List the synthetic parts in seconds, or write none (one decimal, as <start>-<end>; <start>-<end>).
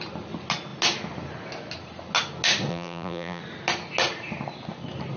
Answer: 2.7-3.4